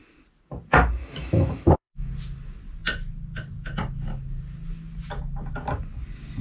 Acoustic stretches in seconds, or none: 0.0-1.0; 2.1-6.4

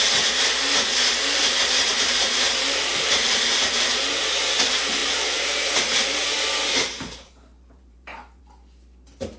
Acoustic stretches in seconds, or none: 0.0-1.9; 4.2-5.0; 8.4-9.4

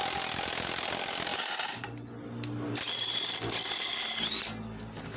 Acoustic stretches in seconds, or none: 0.0-5.2

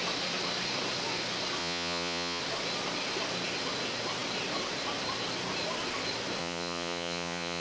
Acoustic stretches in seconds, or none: 0.0-1.6; 2.4-6.4

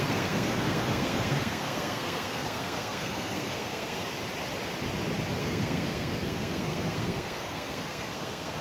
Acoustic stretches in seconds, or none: 4.0-5.4

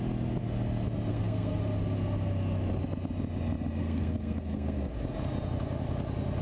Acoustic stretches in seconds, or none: 0.0-1.1; 1.6-3.8; 4.9-6.4